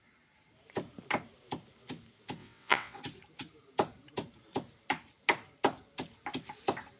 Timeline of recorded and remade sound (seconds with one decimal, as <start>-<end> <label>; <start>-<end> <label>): 0.0-2.4 recorded; 2.4-3.0 remade; 3.0-7.0 recorded